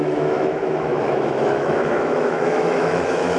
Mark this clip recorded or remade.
remade